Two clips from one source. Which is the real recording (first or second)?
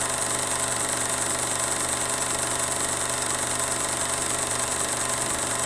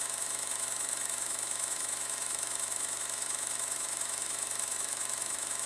first